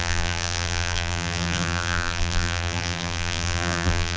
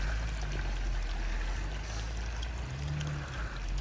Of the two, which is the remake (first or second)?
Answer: first